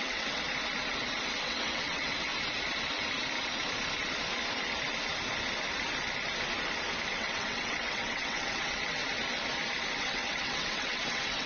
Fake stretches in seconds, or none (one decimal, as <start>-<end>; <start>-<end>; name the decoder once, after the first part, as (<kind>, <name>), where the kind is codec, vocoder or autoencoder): 0.0-0.4 (vocoder, WaveNeXt); 1.4-2.3; 7.1-9.0; 10.0-11.5